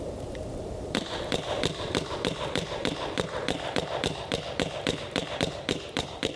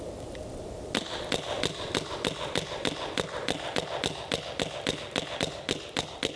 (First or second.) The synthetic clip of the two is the first